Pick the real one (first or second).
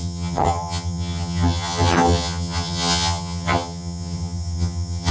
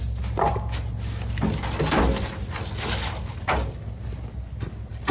second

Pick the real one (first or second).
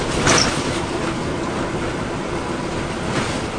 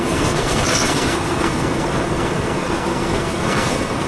first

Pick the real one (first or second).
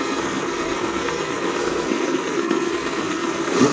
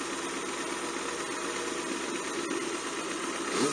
second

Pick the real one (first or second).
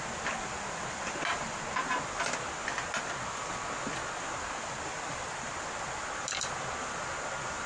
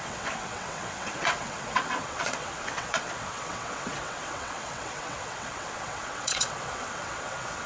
first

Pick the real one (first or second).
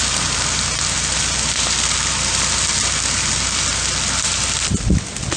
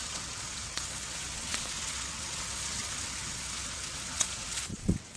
first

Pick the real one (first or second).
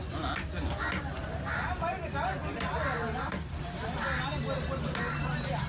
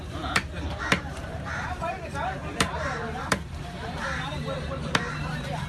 first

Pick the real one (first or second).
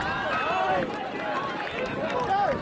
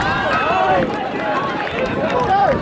first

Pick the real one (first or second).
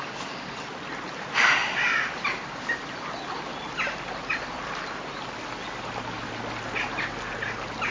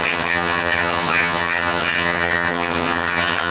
first